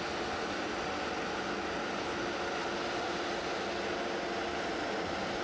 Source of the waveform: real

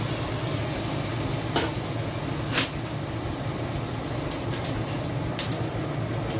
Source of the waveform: real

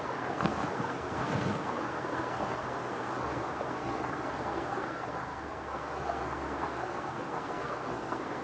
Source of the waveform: fake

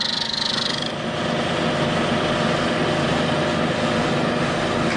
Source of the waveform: real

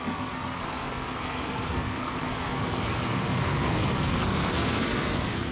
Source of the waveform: fake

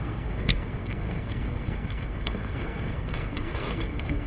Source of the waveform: fake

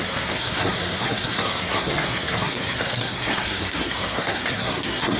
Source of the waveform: fake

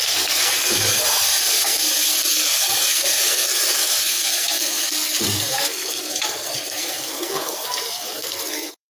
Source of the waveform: fake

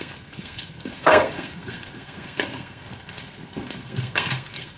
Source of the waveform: fake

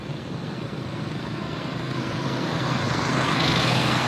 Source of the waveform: fake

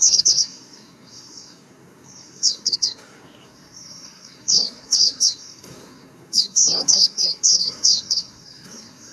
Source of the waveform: fake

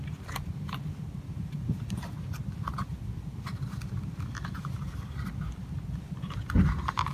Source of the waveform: real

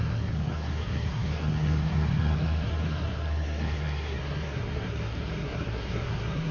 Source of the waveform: fake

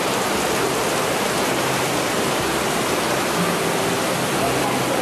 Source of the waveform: real